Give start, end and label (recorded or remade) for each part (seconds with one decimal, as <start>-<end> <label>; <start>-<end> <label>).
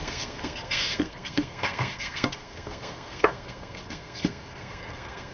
0.0-5.3 remade